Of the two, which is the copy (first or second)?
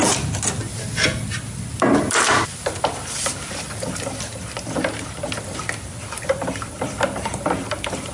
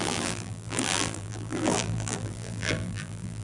second